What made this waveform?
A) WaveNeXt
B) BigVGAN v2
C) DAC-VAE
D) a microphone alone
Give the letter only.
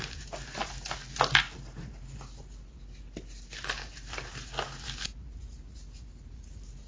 D